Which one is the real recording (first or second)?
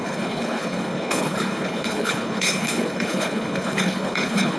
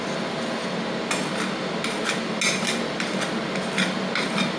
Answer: second